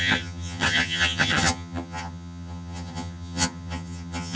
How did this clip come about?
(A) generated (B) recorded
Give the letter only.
A